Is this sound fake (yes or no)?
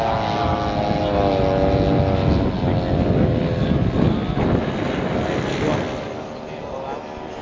no